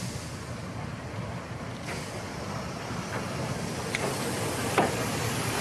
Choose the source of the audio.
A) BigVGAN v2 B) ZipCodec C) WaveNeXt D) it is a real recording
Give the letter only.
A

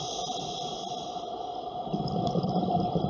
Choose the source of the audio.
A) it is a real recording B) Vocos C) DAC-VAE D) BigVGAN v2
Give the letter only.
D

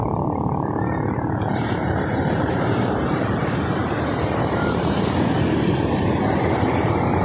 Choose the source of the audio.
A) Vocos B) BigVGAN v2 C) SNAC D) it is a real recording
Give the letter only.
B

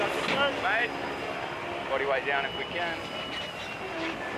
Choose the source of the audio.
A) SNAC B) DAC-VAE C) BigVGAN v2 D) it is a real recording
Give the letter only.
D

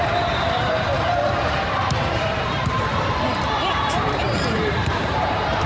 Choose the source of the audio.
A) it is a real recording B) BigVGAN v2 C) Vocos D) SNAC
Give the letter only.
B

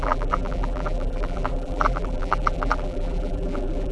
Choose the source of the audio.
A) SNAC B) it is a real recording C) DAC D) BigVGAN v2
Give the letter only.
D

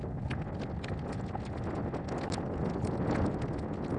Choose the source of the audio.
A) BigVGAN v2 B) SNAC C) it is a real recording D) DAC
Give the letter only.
C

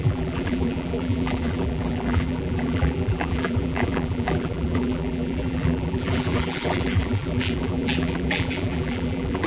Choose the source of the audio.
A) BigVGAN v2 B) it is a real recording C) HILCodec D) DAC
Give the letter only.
A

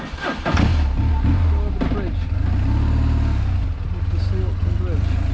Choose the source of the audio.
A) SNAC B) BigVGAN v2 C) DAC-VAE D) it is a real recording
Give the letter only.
D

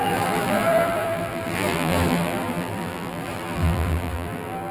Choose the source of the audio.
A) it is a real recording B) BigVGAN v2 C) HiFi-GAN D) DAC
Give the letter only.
B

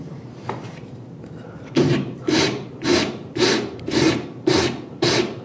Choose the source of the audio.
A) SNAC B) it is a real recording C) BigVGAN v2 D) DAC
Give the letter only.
C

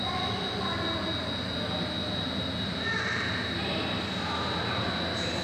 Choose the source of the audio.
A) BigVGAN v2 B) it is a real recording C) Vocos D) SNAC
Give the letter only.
B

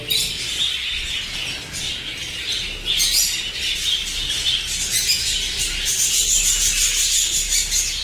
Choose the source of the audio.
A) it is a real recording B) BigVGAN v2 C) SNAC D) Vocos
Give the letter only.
A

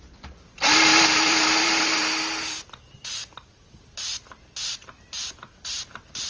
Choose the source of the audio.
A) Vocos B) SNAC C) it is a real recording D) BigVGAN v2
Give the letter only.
D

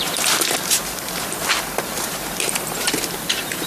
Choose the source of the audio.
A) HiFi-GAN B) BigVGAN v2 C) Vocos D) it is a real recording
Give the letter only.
B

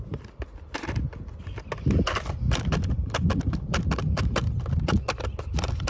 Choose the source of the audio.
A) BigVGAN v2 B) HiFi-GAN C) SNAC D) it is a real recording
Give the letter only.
D